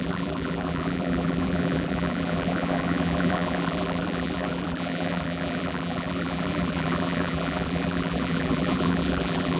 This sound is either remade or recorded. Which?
remade